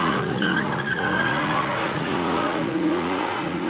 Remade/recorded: remade